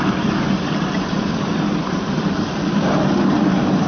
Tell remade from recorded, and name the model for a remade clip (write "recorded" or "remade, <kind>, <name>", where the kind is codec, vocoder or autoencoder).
remade, vocoder, BigVGAN v2